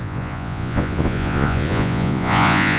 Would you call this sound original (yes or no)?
no